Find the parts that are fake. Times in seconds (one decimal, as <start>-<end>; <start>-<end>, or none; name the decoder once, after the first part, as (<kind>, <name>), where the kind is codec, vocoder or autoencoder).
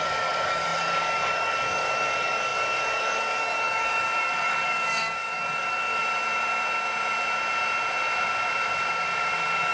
0.0-6.0 (codec, DAC)